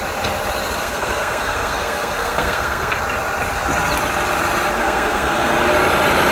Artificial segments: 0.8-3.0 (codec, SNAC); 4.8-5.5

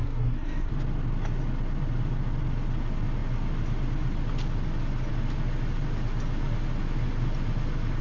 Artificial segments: 0.0-0.7 (codec, SNAC)

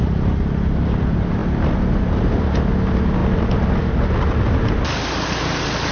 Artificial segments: none

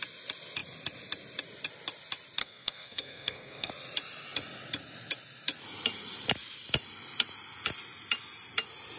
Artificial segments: 2.4-3.7 (codec, SNAC)